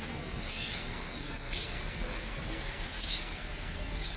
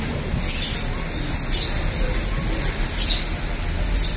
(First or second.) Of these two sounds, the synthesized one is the first